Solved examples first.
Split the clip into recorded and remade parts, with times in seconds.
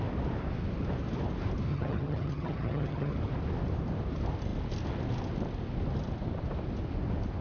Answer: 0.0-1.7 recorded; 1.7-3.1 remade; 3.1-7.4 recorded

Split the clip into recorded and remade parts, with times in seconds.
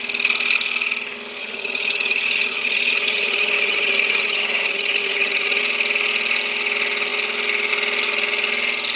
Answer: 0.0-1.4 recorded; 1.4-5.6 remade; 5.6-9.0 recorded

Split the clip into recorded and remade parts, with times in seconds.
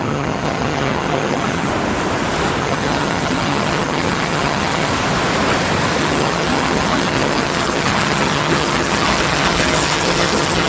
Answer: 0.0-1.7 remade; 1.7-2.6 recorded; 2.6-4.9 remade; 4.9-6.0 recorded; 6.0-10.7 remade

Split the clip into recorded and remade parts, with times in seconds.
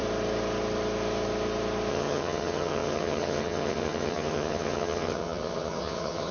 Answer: 0.0-1.9 recorded; 1.9-6.3 remade